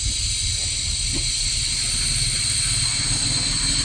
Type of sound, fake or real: real